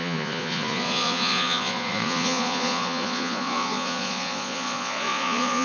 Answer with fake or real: fake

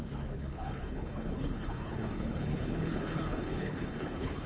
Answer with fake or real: fake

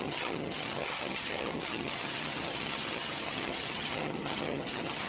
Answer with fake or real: fake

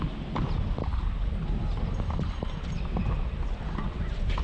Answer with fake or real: real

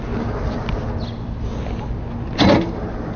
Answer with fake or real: real